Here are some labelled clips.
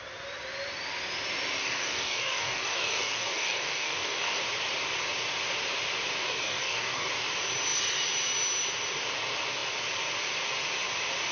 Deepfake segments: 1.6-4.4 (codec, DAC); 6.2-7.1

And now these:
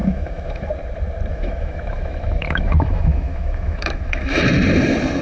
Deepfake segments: 0.0-0.7 (autoencoder, DAC-VAE); 1.3-4.4

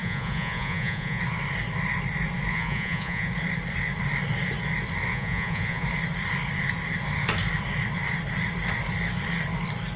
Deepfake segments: 0.0-1.2 (vocoder, Vocos); 2.5-3.3; 5.1-5.8

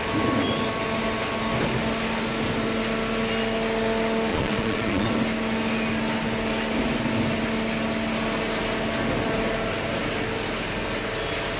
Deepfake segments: 4.3-5.1 (vocoder, Vocos)

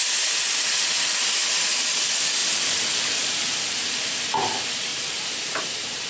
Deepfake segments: 2.4-3.8 (vocoder, BigVGAN v2); 4.9-6.1